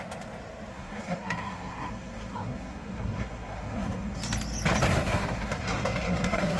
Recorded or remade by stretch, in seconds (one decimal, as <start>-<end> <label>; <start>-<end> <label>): 0.0-0.7 recorded; 0.7-4.2 remade; 4.2-4.9 recorded; 4.9-6.6 remade